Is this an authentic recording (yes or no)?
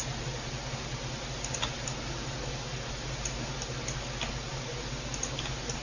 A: yes